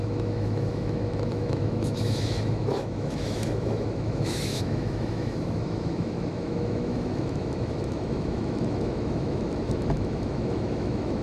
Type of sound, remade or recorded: remade